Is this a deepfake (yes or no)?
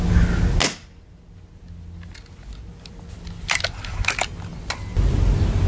no